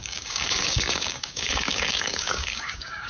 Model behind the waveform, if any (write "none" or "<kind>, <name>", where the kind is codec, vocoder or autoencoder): codec, DAC